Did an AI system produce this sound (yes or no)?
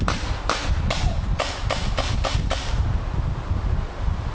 yes